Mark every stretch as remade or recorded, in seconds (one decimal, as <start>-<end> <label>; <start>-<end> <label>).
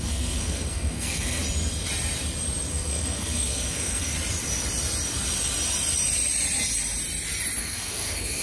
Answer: 0.0-1.4 remade; 1.4-2.7 recorded; 2.7-4.1 remade; 4.1-7.6 recorded; 7.6-8.4 remade